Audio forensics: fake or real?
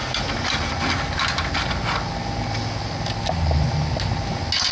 real